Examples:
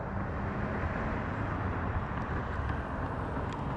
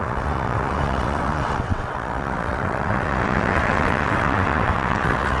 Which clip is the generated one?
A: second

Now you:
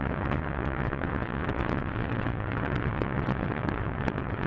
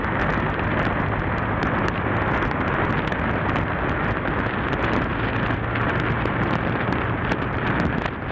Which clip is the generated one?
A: first